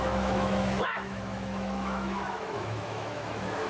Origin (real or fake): fake